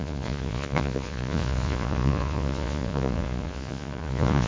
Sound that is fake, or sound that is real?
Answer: fake